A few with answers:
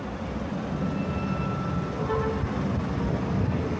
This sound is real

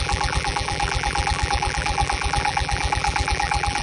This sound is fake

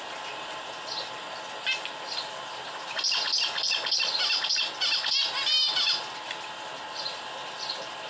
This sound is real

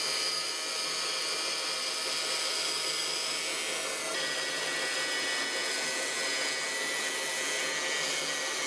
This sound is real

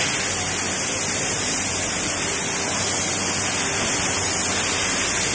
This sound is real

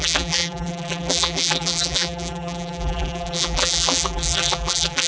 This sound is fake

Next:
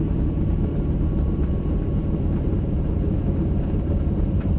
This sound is fake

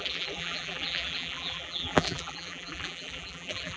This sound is fake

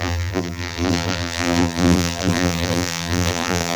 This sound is fake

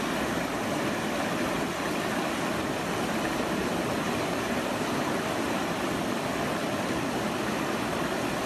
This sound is real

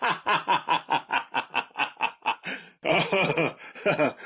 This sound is fake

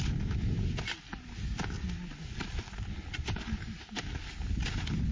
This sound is real